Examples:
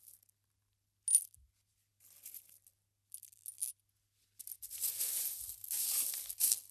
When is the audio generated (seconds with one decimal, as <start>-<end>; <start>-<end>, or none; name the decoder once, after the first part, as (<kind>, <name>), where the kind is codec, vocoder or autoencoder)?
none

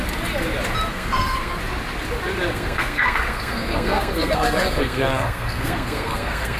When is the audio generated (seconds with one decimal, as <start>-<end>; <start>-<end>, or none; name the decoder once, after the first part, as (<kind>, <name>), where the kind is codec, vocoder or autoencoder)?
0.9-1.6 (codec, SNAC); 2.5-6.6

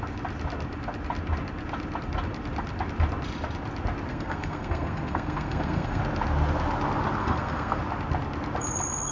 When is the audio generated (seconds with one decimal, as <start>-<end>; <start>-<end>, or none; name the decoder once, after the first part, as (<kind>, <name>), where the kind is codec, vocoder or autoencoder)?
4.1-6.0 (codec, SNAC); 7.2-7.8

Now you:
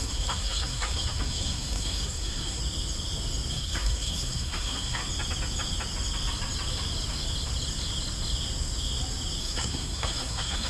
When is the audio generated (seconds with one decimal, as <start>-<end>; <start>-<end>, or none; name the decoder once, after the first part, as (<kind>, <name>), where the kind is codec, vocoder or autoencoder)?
0.0-2.6 (codec, SNAC); 3.5-5.0; 9.4-10.7

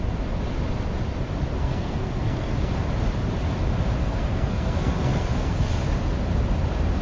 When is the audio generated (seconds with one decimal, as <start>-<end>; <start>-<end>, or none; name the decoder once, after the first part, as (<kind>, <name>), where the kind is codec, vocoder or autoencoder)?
1.6-2.7 (codec, SNAC); 4.0-5.7